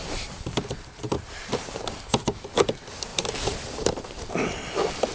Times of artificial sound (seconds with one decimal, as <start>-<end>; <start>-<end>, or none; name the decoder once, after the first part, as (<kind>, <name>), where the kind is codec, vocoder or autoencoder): 0.0-1.9 (vocoder, BigVGAN v2); 3.1-3.9